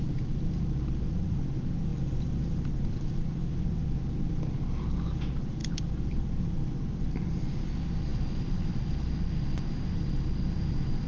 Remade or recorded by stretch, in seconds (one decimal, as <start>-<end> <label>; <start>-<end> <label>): 0.0-8.1 recorded; 8.1-8.8 remade; 8.8-11.1 recorded